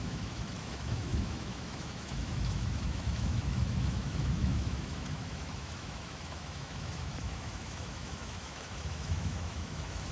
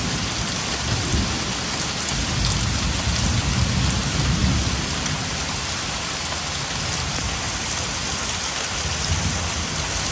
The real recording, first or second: second